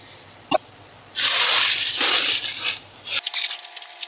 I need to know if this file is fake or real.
real